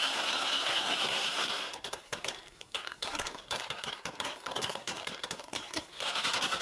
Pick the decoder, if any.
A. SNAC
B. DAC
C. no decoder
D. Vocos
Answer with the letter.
A